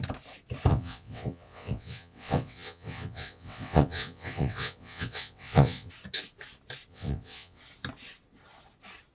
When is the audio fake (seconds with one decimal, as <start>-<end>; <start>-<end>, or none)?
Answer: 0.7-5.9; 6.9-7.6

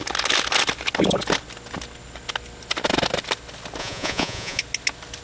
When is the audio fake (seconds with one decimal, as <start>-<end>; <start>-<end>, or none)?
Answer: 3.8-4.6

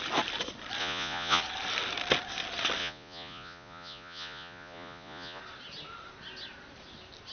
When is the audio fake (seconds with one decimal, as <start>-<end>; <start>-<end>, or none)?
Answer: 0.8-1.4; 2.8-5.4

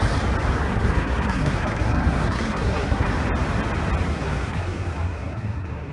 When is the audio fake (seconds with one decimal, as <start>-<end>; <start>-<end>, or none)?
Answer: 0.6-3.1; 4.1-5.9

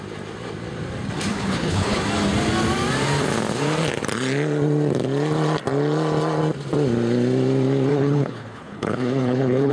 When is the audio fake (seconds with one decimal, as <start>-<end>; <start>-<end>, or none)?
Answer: 1.3-2.0; 7.9-9.7